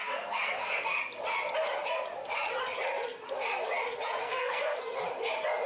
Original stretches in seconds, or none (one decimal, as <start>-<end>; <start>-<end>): 1.0-4.2; 4.8-5.7